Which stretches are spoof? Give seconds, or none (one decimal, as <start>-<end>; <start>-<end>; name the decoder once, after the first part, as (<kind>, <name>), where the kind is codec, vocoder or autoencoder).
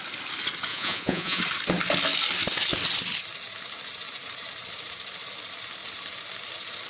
0.7-1.4 (vocoder, Vocos)